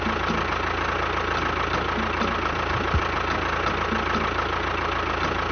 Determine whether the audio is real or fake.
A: real